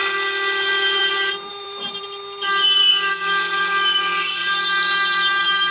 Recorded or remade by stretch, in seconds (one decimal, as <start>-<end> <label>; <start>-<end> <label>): 0.0-1.5 recorded; 1.5-2.0 remade; 2.0-2.9 recorded; 2.9-3.7 remade; 3.7-4.4 recorded; 4.4-5.7 remade

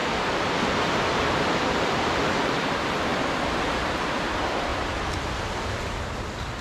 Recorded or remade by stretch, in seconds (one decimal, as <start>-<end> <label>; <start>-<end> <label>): 0.0-1.3 recorded; 1.3-3.1 remade; 3.1-3.6 recorded; 3.6-4.7 remade; 4.7-6.6 recorded